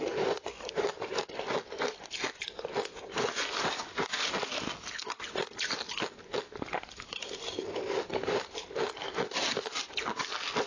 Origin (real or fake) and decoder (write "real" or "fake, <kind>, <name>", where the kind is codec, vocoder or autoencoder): real